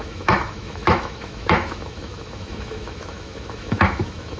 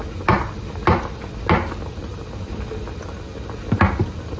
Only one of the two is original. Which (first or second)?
second